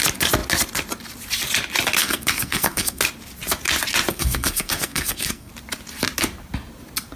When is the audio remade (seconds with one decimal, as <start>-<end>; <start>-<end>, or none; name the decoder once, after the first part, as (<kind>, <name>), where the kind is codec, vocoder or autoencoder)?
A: 2.0-3.0 (codec, SNAC); 4.1-5.5